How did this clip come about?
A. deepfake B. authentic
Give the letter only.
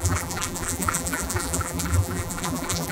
A